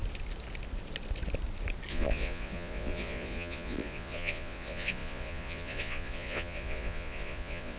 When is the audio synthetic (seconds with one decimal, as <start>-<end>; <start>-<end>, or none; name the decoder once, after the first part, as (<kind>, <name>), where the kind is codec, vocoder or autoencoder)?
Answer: 1.9-7.8 (vocoder, Vocos)